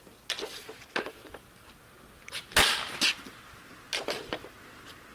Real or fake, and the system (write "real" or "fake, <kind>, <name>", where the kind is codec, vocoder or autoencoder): real